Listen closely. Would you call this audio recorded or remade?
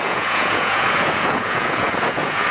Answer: remade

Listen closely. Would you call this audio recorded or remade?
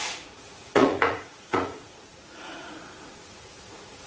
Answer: remade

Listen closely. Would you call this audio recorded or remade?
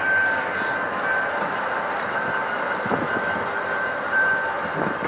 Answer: recorded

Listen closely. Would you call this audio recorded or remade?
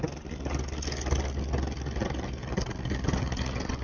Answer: recorded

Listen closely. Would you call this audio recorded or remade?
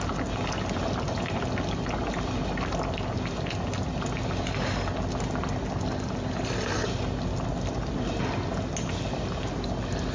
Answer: recorded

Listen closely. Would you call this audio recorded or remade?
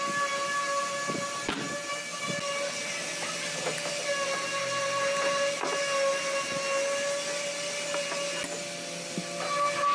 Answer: recorded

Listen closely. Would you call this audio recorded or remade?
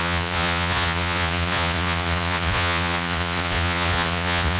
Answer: remade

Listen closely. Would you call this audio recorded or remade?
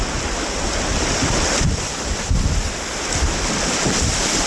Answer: recorded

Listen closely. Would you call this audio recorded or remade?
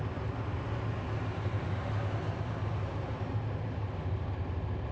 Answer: recorded